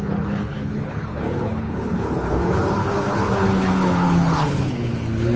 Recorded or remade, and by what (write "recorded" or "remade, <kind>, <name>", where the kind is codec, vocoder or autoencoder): remade, codec, HILCodec